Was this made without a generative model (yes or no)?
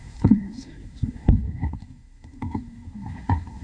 no